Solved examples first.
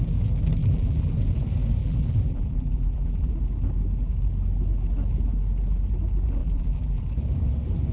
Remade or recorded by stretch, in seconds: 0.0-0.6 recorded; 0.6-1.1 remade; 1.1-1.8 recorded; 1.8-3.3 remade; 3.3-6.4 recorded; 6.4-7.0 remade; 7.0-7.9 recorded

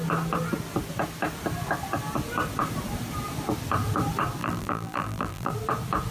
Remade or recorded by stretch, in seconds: 0.0-4.4 recorded; 4.4-5.5 remade; 5.5-6.1 recorded

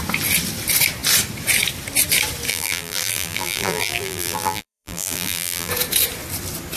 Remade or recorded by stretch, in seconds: 0.0-2.5 recorded; 2.5-5.7 remade; 5.7-6.8 recorded

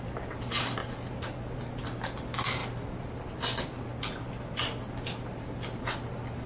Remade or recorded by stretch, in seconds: 0.0-6.5 recorded

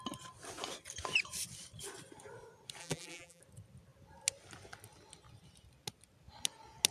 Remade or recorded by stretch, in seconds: 0.0-2.8 recorded; 2.8-3.4 remade; 3.4-6.9 recorded